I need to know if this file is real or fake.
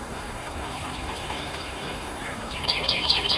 fake